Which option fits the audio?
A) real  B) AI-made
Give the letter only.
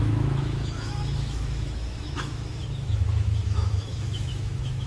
B